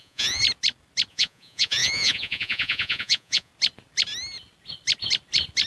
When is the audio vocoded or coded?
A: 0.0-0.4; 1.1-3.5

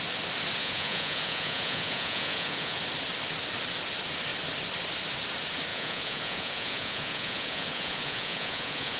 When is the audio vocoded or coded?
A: 0.6-2.8; 5.7-9.0

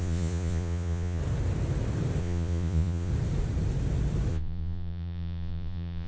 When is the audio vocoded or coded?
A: 0.0-1.2; 2.2-3.1; 4.3-6.1

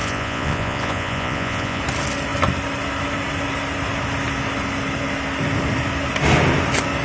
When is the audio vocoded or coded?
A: 0.0-1.8

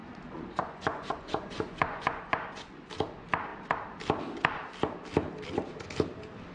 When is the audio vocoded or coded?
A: 0.0-2.9

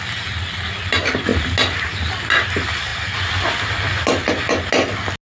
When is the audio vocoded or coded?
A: none